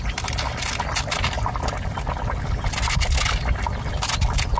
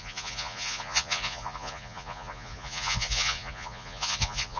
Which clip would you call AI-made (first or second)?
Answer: second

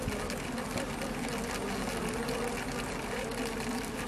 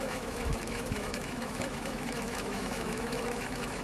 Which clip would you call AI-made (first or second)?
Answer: second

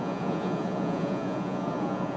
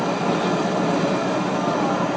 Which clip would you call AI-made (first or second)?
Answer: first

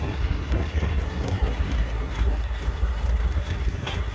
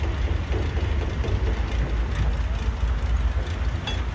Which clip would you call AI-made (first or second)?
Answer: first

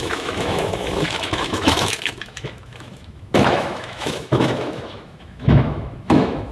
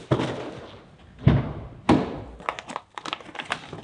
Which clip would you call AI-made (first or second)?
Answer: first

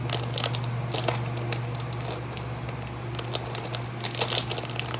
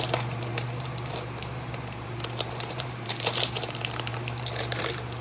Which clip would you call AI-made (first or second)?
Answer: second